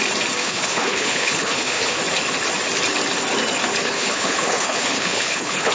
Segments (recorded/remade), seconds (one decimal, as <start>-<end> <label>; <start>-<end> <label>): 0.0-0.4 recorded; 0.4-2.0 remade; 2.0-3.8 recorded; 3.8-5.7 remade